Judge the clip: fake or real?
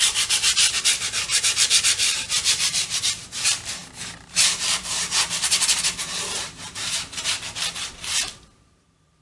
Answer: fake